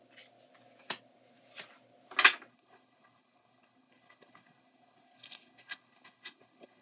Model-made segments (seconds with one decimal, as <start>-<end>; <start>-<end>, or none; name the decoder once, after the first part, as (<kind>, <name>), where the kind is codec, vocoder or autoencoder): 2.5-6.8 (codec, HILCodec)